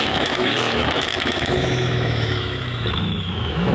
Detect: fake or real fake